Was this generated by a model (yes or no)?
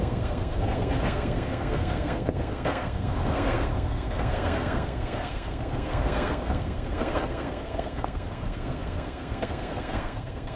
yes